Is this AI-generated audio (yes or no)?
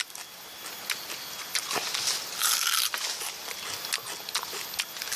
no